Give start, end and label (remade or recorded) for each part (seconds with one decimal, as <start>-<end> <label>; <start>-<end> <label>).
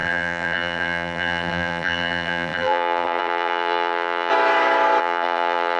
0.0-4.3 remade; 4.3-5.0 recorded; 5.0-5.8 remade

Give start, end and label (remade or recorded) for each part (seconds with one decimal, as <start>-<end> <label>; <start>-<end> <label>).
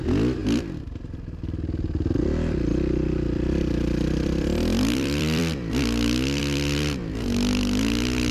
0.0-0.4 recorded; 0.4-5.4 remade; 5.4-8.3 recorded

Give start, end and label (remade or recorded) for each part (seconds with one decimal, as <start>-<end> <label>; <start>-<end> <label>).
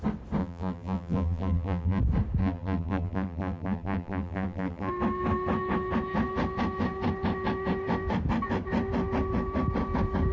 0.0-0.4 recorded; 0.4-2.0 remade; 2.0-2.4 recorded; 2.4-4.9 remade; 4.9-10.3 recorded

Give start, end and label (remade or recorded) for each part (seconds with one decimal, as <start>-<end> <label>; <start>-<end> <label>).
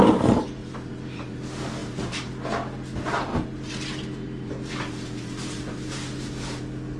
0.0-0.6 recorded; 0.6-1.4 remade; 1.4-1.8 recorded; 1.8-2.3 remade; 2.3-3.3 recorded; 3.3-6.6 remade; 6.6-7.0 recorded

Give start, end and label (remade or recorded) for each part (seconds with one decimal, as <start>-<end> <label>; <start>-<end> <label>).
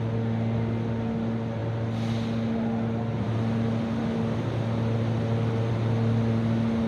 0.0-6.9 recorded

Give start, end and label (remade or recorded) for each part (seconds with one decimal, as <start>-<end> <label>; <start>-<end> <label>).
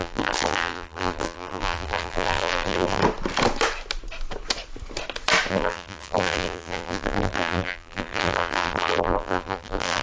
0.0-3.0 remade; 3.0-5.5 recorded; 5.5-10.0 remade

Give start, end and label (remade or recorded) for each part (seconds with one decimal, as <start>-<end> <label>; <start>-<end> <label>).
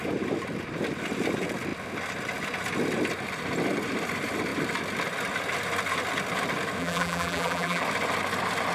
0.0-6.8 recorded; 6.8-7.8 remade; 7.8-8.7 recorded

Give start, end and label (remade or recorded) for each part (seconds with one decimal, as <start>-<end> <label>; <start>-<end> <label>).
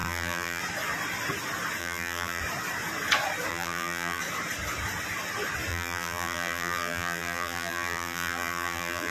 0.0-0.6 remade; 0.6-1.8 recorded; 1.8-2.4 remade; 2.4-3.5 recorded; 3.5-4.2 remade; 4.2-5.7 recorded; 5.7-9.1 remade